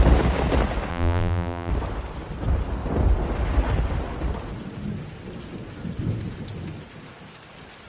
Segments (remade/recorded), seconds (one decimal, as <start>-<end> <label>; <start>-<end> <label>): 0.0-0.9 recorded; 0.9-1.7 remade; 1.7-7.9 recorded